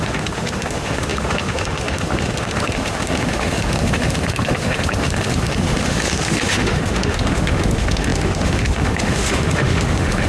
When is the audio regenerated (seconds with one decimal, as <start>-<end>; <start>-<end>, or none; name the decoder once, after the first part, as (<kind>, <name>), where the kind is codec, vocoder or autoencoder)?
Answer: 0.0-10.3 (autoencoder, DAC-VAE)